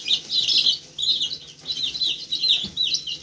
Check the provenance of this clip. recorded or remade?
recorded